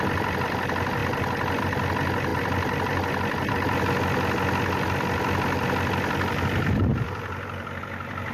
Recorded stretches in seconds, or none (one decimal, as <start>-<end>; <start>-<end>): 0.0-8.3